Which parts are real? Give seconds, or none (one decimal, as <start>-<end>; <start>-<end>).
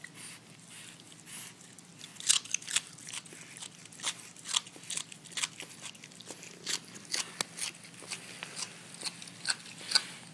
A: 0.0-10.3